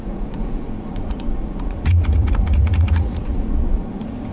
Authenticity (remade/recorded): remade